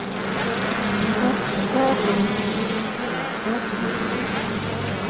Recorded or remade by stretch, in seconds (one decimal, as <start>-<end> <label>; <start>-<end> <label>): 0.0-5.1 recorded